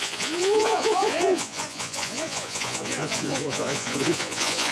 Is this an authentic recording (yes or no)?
no